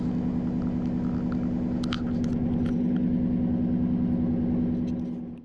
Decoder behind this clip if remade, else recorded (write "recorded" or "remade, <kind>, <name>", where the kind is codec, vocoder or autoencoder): recorded